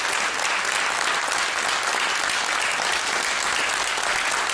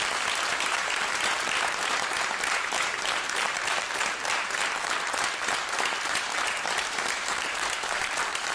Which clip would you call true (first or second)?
first